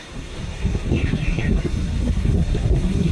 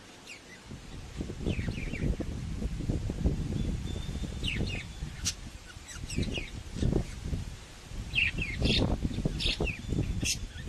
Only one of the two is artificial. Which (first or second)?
first